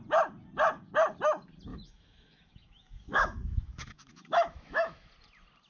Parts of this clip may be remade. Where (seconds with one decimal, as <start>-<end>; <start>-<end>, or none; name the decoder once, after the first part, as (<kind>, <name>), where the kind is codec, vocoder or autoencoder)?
1.7-5.1 (autoencoder, DAC-VAE)